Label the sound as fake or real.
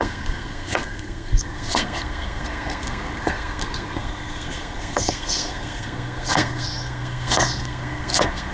fake